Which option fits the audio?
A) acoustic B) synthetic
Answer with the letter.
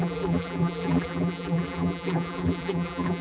B